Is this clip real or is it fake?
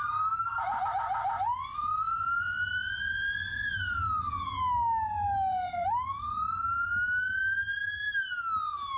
real